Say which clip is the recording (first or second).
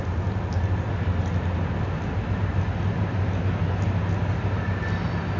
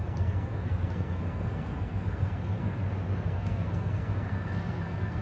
first